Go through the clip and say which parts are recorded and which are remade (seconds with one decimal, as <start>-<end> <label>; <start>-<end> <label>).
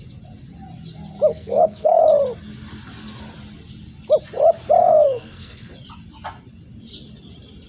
0.0-1.3 recorded; 1.3-2.1 remade; 2.1-4.8 recorded; 4.8-5.7 remade; 5.7-7.7 recorded